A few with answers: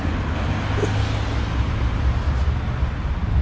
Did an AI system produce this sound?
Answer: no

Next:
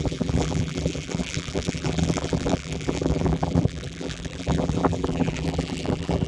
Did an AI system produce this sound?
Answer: yes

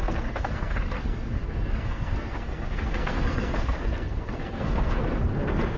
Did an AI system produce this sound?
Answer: yes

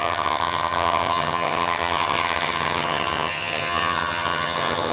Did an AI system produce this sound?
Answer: yes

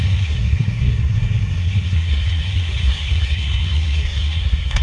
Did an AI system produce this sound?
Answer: yes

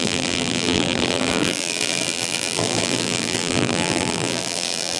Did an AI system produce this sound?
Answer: yes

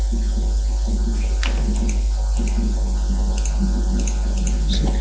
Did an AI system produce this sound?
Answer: no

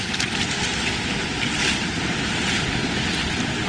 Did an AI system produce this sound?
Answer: no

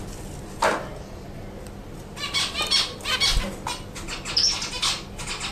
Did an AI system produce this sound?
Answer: no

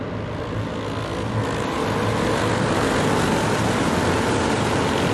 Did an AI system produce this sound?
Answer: no